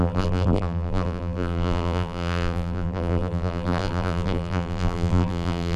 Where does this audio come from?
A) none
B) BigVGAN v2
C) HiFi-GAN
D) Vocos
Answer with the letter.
B